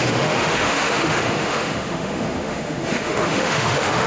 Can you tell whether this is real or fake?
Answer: fake